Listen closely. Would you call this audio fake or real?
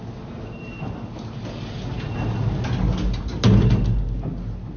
real